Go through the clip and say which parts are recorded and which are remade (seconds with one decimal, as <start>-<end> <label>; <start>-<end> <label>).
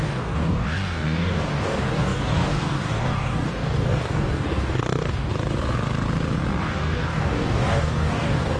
0.0-5.3 remade; 5.3-6.6 recorded; 6.6-8.6 remade